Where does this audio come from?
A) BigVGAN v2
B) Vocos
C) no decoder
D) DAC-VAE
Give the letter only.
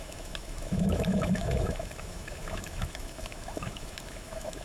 D